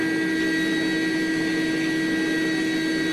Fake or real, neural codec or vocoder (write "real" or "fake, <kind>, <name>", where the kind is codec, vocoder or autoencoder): real